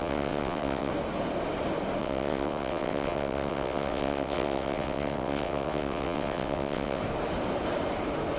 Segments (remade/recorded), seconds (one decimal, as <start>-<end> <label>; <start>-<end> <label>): 0.0-0.9 remade; 0.9-2.0 recorded; 2.0-7.0 remade; 7.0-8.4 recorded